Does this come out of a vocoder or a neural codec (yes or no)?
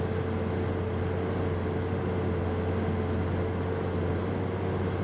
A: no